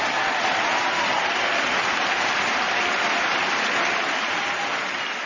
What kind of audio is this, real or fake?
real